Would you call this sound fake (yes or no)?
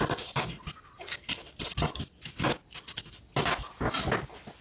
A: no